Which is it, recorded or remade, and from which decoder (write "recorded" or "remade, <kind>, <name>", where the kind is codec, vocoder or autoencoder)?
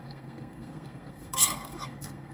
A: remade, codec, SNAC